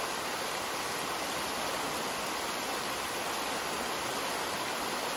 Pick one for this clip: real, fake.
real